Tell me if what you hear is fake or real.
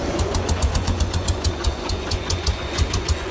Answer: fake